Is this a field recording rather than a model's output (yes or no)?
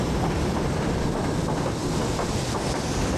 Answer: yes